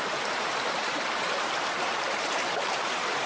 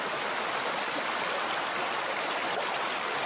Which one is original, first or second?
second